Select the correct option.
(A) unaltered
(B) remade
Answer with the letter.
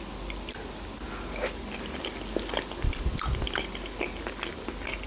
A